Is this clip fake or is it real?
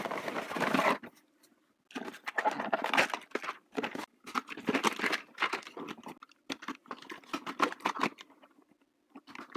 real